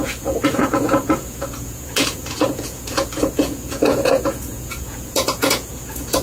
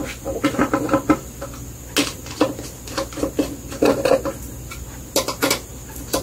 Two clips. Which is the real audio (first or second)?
second